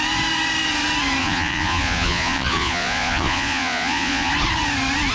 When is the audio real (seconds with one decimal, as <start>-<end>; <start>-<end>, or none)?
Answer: 0.0-1.2; 4.3-5.1